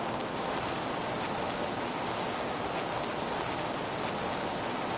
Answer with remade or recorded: recorded